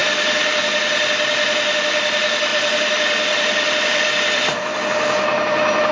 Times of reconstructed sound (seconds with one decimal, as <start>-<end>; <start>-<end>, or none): 0.0-0.6; 2.5-4.8